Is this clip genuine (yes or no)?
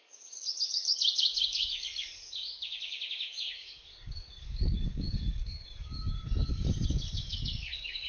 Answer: no